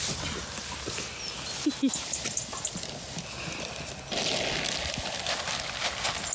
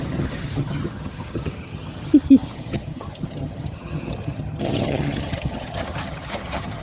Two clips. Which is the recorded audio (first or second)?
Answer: first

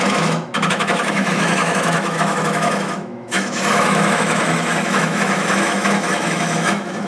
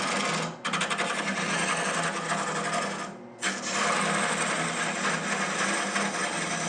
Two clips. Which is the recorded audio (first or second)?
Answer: second